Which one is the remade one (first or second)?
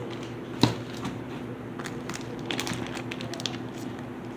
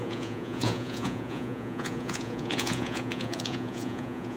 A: second